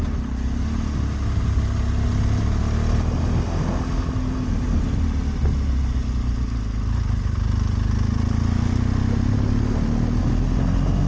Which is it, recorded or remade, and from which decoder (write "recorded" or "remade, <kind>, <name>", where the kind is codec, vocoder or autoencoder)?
recorded